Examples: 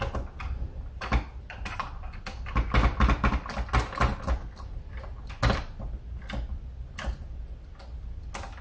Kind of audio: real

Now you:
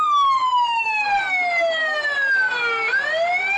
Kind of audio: real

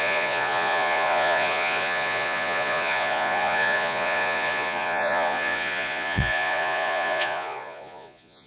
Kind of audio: fake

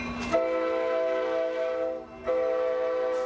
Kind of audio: real